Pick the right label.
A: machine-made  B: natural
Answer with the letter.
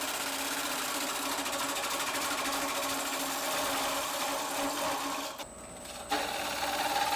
B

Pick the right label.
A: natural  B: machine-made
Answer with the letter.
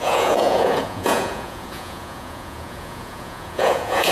B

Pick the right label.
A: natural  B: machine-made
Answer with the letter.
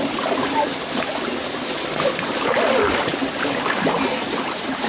A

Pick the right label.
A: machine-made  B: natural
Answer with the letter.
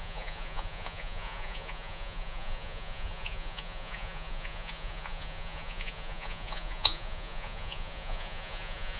A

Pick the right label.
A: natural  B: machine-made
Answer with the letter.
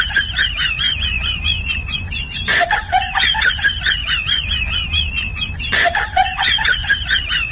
B